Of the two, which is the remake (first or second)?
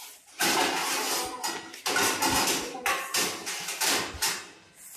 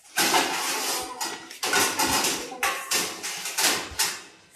second